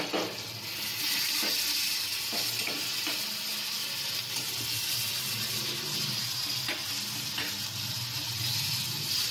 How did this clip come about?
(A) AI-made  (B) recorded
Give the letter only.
B